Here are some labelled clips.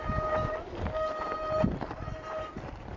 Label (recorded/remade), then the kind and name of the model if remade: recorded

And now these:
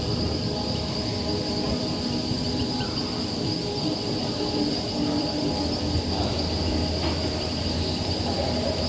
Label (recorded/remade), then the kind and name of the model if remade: remade, vocoder, BigVGAN v2